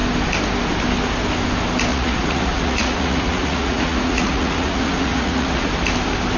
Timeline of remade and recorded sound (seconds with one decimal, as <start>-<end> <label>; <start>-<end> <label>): 0.0-1.9 recorded; 1.9-5.7 remade; 5.7-6.4 recorded